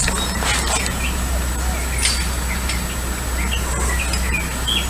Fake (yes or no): no